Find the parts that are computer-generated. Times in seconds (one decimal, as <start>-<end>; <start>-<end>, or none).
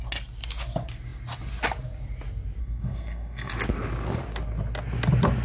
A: 2.6-3.5